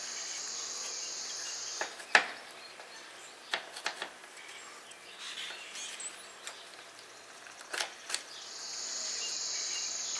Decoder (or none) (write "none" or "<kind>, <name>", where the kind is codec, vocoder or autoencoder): none